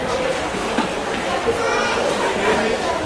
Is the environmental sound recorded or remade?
remade